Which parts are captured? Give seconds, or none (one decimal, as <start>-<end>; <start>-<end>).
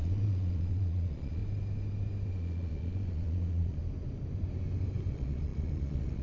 1.4-2.3; 3.8-5.1